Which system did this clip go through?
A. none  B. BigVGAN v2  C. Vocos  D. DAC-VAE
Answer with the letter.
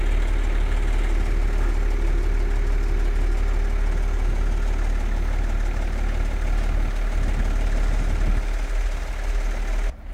A